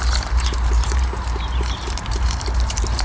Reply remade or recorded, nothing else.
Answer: remade